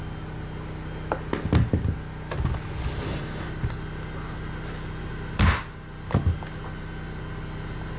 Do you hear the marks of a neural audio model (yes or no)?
no